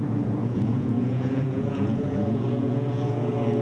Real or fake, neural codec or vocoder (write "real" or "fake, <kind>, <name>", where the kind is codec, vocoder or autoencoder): fake, vocoder, Vocos